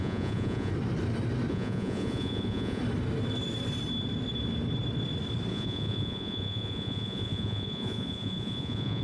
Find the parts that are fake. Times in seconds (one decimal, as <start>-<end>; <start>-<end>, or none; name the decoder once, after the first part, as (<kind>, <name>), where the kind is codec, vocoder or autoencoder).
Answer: 0.0-0.7 (vocoder, Vocos); 1.5-2.8; 5.5-9.0